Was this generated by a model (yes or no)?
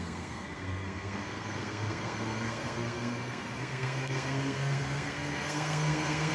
yes